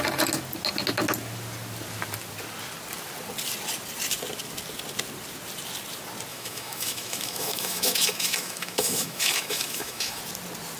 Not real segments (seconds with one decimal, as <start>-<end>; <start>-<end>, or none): 6.3-10.2

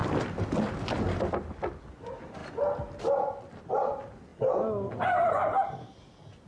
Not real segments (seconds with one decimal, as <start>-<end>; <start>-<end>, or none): none

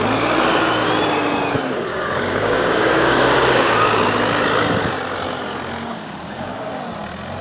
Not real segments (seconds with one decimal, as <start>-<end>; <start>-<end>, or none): 1.9-4.0; 5.9-6.5

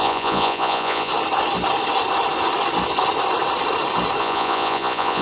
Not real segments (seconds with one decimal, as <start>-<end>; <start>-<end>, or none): 0.0-1.1; 4.2-5.2

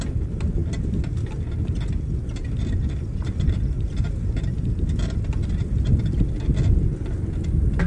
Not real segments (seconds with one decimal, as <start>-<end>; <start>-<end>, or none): none